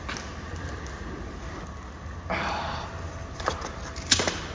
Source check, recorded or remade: recorded